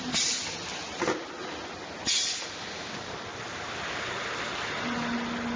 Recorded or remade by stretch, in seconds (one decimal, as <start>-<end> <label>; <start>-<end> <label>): 0.0-3.3 recorded; 3.3-4.6 remade; 4.6-5.6 recorded

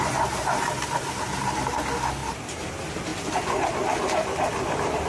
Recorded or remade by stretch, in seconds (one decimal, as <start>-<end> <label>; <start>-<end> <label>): 0.0-3.1 remade; 3.1-5.1 recorded

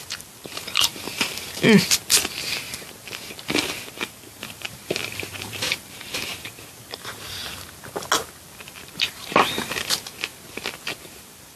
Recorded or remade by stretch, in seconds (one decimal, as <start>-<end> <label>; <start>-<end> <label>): 0.0-2.0 remade; 2.0-3.9 recorded; 3.9-7.4 remade; 7.4-8.4 recorded; 8.4-10.3 remade; 10.3-11.0 recorded; 11.0-11.6 remade